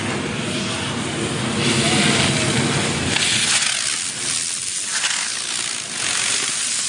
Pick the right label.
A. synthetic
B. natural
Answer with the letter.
B